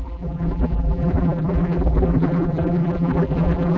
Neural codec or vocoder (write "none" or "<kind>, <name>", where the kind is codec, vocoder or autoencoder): vocoder, BigVGAN v2